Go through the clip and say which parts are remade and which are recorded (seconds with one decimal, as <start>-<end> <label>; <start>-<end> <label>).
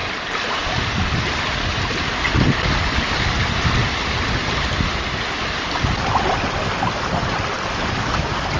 0.0-8.6 recorded